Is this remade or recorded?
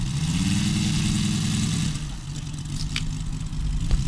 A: recorded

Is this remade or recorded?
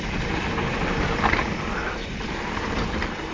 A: remade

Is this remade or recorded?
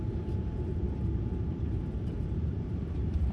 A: remade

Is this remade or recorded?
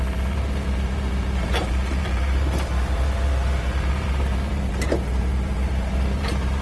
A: remade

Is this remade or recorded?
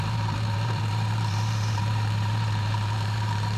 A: remade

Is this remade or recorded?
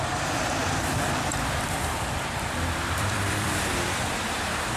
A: remade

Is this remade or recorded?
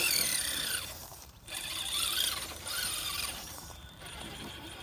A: remade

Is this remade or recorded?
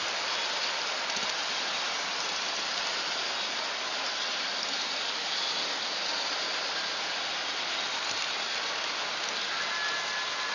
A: recorded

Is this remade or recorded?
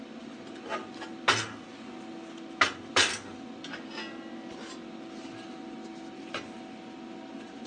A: recorded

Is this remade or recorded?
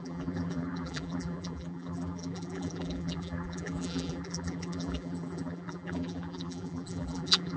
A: remade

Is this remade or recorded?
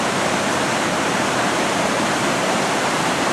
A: remade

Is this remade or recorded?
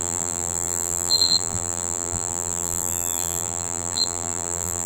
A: remade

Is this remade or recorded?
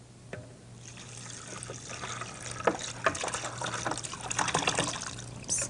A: recorded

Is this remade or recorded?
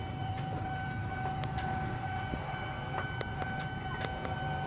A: remade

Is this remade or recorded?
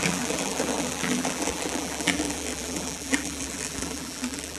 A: remade